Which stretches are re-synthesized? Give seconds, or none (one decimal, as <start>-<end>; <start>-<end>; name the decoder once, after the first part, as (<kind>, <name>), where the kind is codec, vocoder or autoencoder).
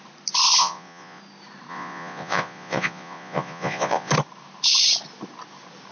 0.6-1.2 (vocoder, Vocos); 1.7-4.1